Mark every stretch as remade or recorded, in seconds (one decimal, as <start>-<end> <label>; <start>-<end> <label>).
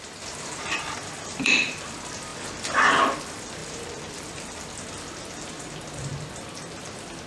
0.0-2.3 remade; 2.3-3.0 recorded; 3.0-7.3 remade